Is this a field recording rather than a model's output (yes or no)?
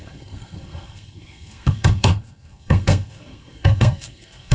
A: no